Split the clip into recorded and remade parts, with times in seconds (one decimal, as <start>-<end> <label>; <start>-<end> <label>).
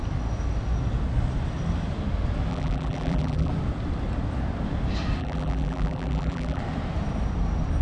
0.0-2.5 recorded; 2.5-3.5 remade; 3.5-5.2 recorded; 5.2-6.6 remade; 6.6-7.8 recorded